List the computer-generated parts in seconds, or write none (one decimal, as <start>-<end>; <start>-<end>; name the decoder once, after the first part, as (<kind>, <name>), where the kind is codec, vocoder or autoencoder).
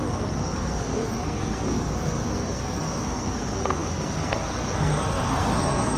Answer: 0.0-6.0 (codec, SNAC)